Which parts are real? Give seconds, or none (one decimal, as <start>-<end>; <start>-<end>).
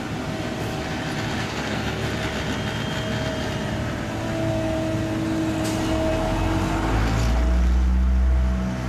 0.0-1.4; 2.1-8.9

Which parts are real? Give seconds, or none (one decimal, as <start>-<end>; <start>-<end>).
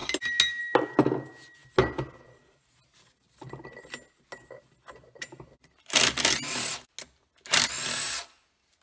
0.0-8.8